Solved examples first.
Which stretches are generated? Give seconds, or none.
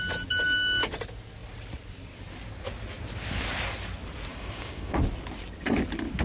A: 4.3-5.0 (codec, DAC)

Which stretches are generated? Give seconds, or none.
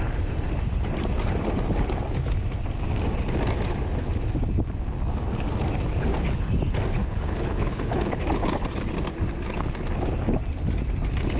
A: 7.0-8.2 (codec, HILCodec)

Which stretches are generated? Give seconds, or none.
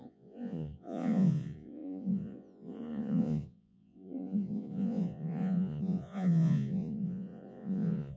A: 0.0-8.2 (vocoder, Vocos)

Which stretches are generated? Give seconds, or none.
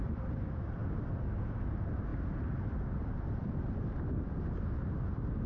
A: 0.0-0.8 (vocoder, BigVGAN v2); 1.4-2.1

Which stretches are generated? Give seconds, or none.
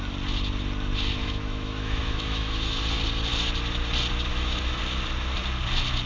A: 1.2-2.8 (autoencoder, DAC-VAE); 4.3-4.8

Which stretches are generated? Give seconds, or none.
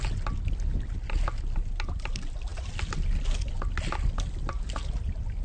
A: none